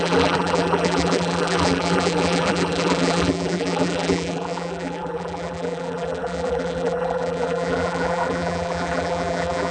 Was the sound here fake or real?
fake